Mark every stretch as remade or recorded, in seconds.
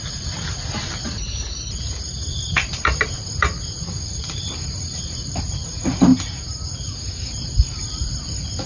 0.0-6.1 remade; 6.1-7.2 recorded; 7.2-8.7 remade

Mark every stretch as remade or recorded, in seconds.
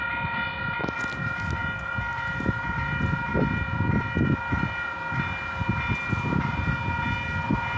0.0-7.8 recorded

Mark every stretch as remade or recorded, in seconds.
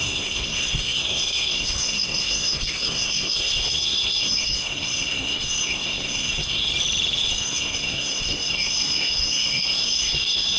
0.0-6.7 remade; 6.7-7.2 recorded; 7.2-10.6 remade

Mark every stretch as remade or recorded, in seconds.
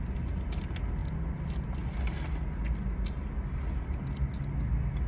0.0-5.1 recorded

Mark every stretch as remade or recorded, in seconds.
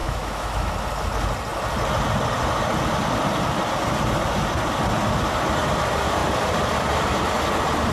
0.0-0.7 remade; 0.7-7.9 recorded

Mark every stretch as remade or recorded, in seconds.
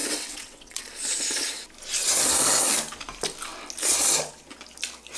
0.0-0.8 remade; 0.8-5.2 recorded